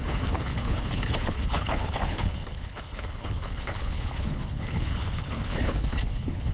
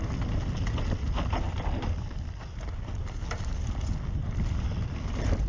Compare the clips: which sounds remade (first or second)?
first